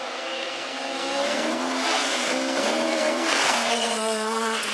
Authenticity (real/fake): fake